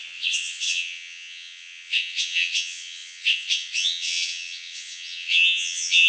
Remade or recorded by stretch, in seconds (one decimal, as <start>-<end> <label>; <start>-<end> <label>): 0.0-6.1 remade